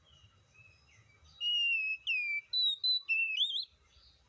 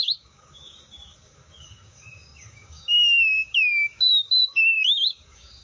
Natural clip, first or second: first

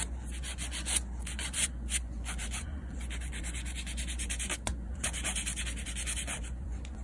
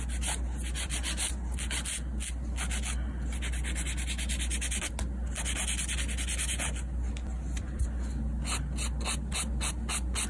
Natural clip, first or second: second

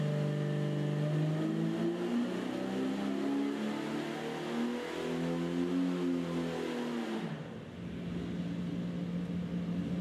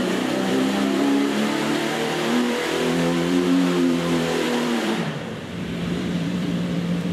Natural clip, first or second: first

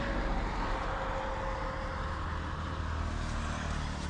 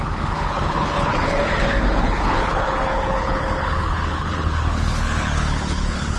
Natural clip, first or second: first